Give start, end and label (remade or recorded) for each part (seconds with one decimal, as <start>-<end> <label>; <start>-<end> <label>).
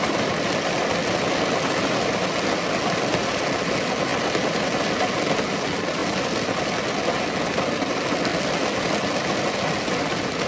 0.0-10.5 recorded